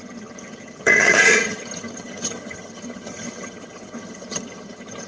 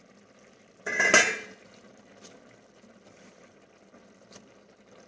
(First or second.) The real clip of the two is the second